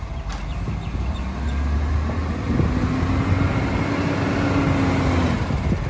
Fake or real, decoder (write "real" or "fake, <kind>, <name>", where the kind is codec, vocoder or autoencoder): real